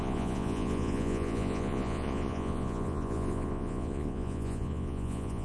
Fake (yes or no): yes